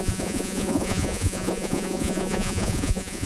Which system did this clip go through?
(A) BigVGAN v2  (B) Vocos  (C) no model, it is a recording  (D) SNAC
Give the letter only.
B